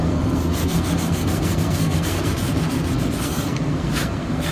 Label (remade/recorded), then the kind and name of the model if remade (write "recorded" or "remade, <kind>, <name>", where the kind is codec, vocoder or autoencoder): remade, codec, SNAC